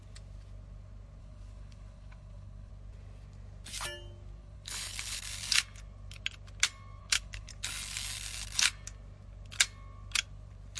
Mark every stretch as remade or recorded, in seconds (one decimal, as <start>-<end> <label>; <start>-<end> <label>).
0.0-1.2 recorded; 1.2-2.7 remade; 2.7-4.4 recorded; 4.4-5.2 remade; 5.2-7.0 recorded; 7.0-7.5 remade; 7.5-10.8 recorded